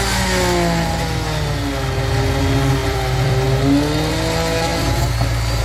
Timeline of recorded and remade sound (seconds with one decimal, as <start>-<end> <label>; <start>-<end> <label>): 0.0-2.8 recorded; 2.8-3.3 remade; 3.3-5.6 recorded